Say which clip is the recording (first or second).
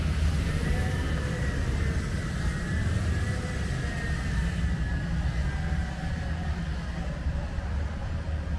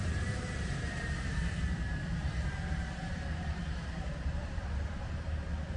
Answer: first